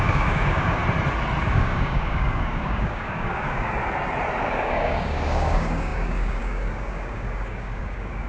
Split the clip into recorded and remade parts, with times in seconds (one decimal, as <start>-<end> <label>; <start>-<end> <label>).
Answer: 0.0-0.8 remade; 0.8-1.4 recorded; 1.4-3.8 remade; 3.8-4.4 recorded; 4.4-8.3 remade